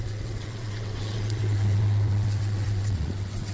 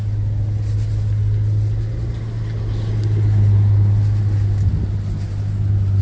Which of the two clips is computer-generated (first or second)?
first